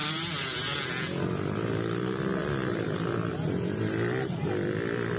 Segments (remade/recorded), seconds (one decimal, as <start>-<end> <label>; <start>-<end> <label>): 0.0-0.9 remade; 0.9-5.2 recorded